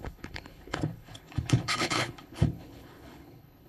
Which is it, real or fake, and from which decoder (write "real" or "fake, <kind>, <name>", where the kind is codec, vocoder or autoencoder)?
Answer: fake, codec, HILCodec